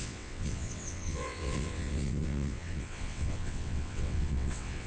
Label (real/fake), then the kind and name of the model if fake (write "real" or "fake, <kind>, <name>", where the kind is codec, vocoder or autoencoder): fake, vocoder, WaveNeXt